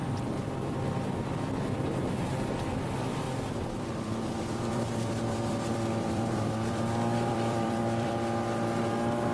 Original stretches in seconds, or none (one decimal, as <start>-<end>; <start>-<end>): 0.0-3.1; 8.1-9.3